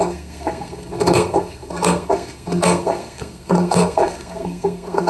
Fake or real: fake